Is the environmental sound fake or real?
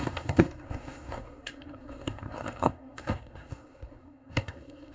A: fake